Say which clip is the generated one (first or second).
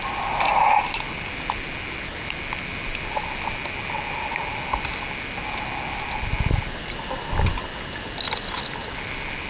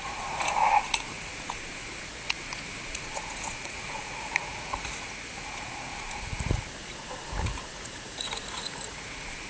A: second